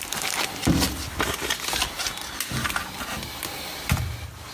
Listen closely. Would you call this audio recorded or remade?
recorded